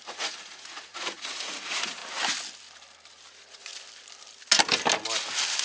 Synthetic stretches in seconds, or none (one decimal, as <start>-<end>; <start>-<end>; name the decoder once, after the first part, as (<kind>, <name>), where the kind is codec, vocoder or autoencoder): 0.0-2.0 (vocoder, Vocos); 3.3-3.7

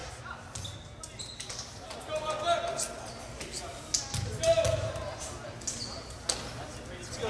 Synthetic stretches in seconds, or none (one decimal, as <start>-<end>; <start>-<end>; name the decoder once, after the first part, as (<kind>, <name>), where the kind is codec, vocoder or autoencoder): none

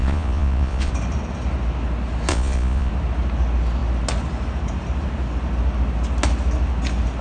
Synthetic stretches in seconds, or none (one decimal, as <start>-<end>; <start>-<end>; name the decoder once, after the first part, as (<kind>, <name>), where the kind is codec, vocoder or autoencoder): 0.0-0.9 (vocoder, Vocos); 2.3-2.9